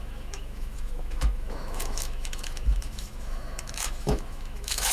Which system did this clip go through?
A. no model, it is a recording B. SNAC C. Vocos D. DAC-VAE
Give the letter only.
D